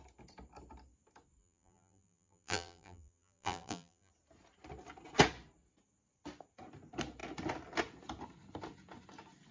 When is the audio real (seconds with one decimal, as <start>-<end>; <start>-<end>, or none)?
0.0-1.4; 4.1-9.5